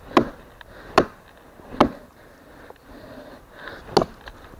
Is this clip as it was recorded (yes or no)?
yes